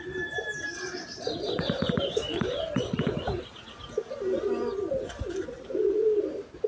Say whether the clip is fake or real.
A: real